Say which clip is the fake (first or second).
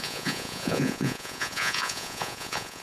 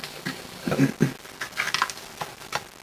first